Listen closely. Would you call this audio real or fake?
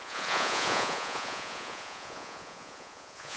fake